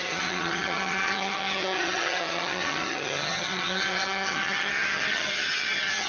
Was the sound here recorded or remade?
remade